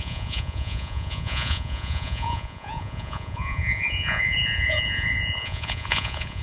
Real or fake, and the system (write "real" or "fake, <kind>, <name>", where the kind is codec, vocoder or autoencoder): fake, vocoder, Vocos